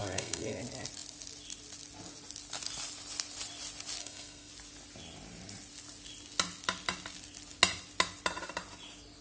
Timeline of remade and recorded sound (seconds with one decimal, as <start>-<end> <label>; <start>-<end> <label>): 0.0-0.6 remade; 0.6-4.0 recorded; 4.0-4.5 remade; 4.5-9.2 recorded